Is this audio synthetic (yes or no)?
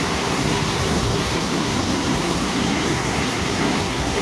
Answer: yes